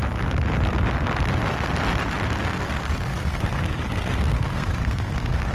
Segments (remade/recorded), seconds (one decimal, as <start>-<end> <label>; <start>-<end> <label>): 0.0-3.1 recorded; 3.1-5.5 remade